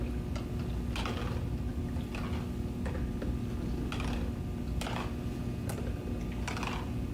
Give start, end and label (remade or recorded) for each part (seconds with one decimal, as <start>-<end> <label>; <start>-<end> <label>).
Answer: 0.0-7.1 recorded